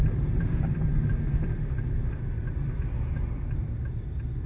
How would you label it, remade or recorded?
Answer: recorded